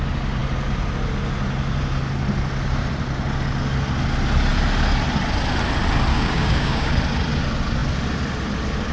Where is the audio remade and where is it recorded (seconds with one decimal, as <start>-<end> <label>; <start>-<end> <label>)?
0.0-6.1 recorded; 6.1-6.9 remade; 6.9-8.9 recorded